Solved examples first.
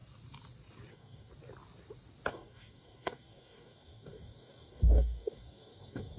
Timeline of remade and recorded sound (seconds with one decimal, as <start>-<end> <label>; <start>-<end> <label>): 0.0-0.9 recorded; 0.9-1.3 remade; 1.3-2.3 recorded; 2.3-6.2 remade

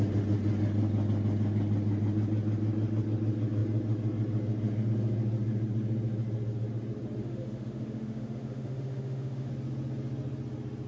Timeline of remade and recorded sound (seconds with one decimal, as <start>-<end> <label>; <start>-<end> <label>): 0.0-7.2 recorded; 7.2-9.5 remade; 9.5-10.9 recorded

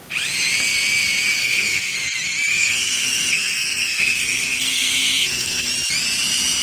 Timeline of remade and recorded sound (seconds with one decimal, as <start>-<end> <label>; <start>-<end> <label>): 0.0-1.4 recorded; 1.4-2.0 remade; 2.0-2.5 recorded; 2.5-5.7 remade; 5.7-6.6 recorded

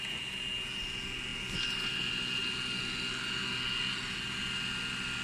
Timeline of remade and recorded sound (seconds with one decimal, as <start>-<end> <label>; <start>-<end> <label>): 0.0-5.2 recorded

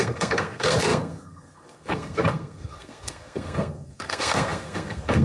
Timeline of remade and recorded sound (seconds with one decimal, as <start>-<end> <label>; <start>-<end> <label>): 0.0-5.2 remade

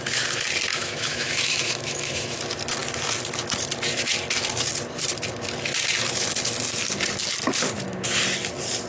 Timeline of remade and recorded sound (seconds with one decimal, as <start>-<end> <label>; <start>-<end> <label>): 0.0-0.7 recorded; 0.7-2.4 remade; 2.4-8.9 recorded